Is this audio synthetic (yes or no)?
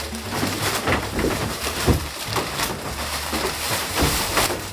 yes